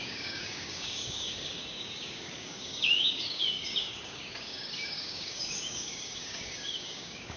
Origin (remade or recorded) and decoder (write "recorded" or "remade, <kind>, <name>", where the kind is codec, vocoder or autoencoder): remade, codec, DAC